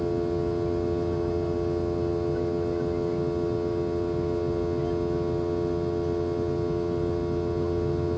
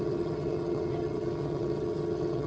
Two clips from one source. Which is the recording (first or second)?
first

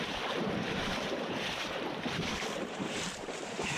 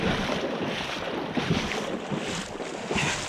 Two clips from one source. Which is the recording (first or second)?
second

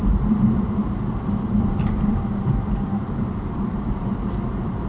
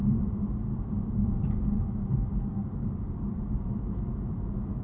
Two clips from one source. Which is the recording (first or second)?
second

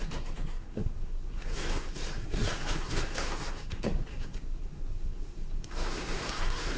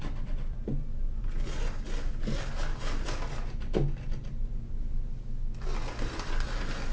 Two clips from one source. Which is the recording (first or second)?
second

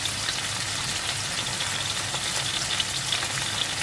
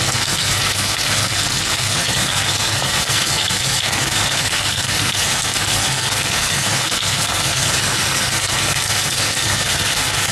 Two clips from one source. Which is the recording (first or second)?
first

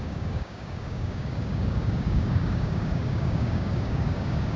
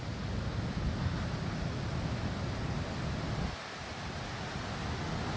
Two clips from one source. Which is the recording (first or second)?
second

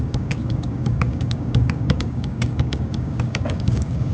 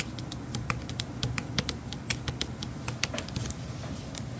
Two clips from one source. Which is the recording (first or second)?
second